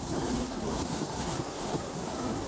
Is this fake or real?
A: fake